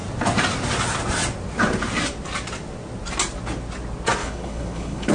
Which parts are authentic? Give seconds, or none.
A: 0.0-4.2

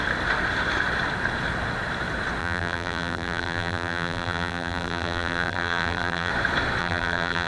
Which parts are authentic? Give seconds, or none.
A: 0.0-2.4; 6.3-6.8

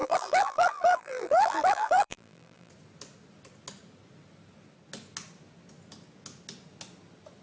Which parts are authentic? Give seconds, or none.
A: 2.7-7.4

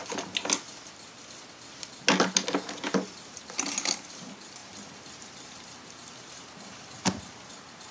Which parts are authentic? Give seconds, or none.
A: 0.0-4.6; 7.2-7.9

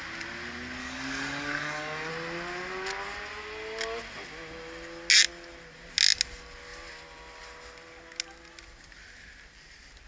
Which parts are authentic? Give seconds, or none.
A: 0.0-0.8; 2.1-10.1

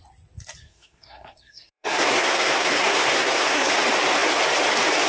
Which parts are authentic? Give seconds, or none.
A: 0.0-0.6; 3.7-5.1

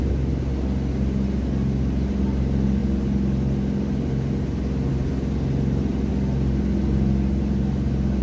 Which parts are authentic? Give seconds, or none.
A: 0.0-8.2

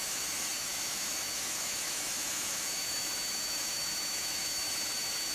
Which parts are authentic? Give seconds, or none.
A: none